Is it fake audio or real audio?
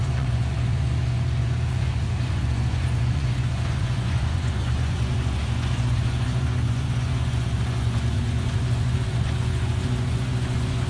fake